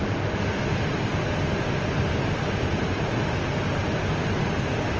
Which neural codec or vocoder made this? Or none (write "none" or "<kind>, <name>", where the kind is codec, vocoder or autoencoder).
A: none